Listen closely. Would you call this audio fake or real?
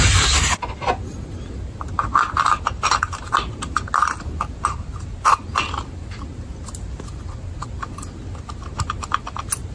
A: real